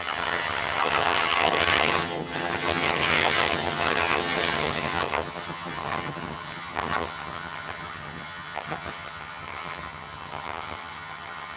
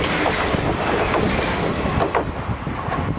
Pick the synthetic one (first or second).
first